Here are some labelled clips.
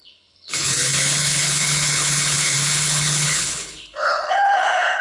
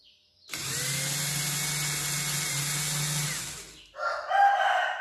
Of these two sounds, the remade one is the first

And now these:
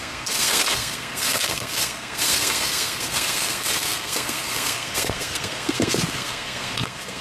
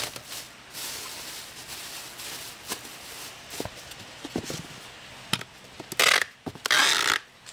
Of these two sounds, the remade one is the first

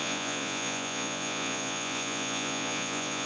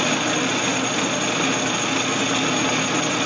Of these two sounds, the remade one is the first